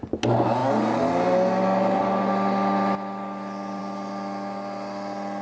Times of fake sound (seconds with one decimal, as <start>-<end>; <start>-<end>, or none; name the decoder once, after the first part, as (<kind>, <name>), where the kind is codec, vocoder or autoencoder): none